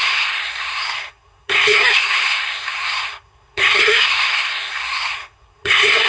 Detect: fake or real fake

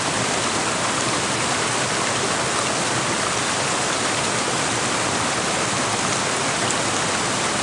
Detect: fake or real real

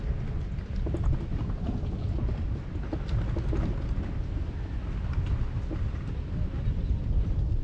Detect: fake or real real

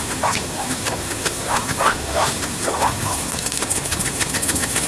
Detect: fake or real fake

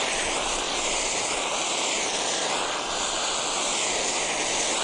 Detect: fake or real real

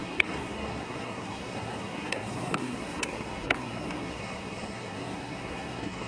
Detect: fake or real fake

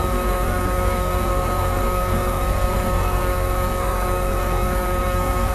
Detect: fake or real fake